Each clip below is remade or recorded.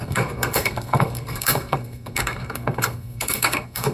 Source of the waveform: remade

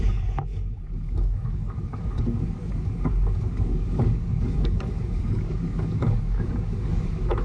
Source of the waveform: remade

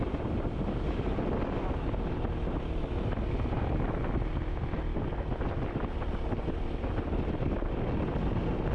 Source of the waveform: recorded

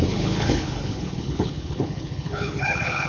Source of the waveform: remade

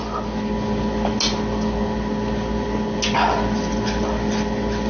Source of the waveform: recorded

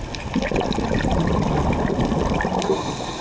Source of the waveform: recorded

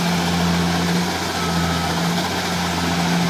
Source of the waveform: recorded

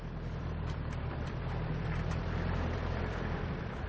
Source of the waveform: remade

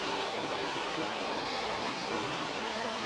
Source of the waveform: remade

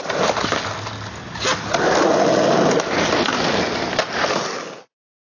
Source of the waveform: recorded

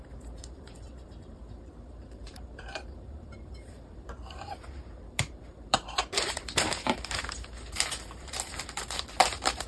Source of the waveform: remade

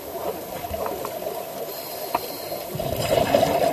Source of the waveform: recorded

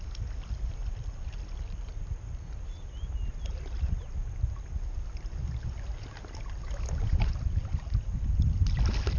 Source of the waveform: recorded